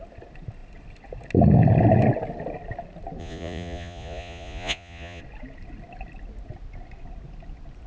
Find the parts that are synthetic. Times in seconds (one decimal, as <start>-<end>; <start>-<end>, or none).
3.2-5.2